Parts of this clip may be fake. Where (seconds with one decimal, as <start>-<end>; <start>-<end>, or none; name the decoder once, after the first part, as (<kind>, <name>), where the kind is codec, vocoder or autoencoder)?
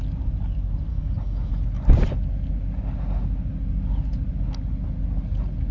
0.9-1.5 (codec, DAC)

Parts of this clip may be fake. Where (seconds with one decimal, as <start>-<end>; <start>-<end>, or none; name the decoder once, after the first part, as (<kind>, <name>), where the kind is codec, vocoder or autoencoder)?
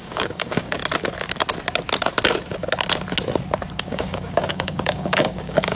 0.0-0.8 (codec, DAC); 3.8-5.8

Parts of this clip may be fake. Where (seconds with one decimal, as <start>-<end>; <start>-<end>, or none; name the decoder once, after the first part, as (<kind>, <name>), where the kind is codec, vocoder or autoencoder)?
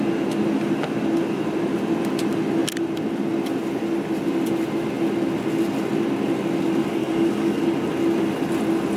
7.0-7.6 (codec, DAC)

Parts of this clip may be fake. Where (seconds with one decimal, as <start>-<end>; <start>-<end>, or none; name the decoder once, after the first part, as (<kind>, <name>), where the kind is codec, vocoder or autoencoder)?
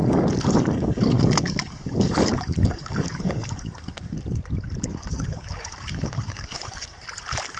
0.0-4.2 (codec, DAC); 4.9-7.0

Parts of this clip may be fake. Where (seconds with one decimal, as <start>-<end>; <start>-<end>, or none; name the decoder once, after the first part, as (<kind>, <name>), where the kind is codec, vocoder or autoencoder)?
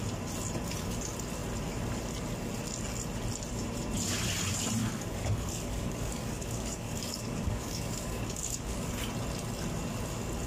4.8-8.9 (codec, DAC)